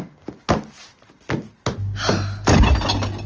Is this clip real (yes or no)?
yes